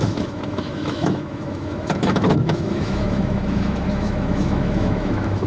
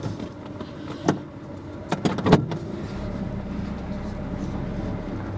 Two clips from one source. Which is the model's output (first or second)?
first